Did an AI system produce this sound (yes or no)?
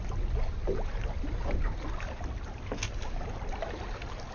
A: no